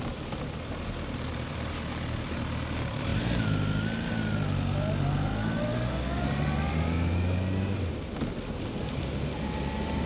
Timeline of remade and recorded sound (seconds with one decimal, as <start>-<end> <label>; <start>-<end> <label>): 0.0-10.1 recorded